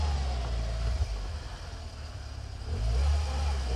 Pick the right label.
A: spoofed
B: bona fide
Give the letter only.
B